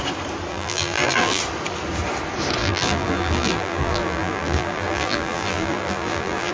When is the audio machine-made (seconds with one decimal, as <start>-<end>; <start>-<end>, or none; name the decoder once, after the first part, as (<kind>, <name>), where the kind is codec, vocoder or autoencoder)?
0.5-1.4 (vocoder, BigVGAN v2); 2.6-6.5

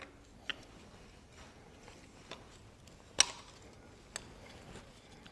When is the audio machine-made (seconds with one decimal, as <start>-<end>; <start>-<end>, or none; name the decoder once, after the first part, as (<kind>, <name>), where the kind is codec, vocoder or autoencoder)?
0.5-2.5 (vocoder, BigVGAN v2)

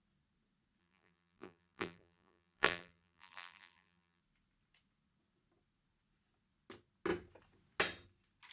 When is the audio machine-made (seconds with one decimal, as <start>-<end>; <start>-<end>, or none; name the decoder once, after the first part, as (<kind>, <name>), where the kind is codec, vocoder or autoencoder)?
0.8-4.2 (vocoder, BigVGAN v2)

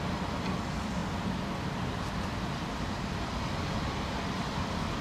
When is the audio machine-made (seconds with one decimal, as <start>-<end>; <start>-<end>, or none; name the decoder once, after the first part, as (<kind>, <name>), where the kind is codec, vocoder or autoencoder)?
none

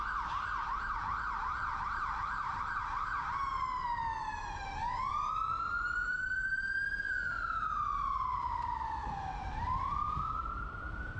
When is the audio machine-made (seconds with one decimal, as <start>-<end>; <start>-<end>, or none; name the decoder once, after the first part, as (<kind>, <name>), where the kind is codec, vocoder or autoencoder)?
0.0-4.6 (vocoder, BigVGAN v2); 5.1-11.2